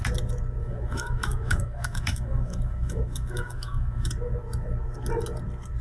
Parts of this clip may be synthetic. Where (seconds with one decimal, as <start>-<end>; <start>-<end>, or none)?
0.6-4.1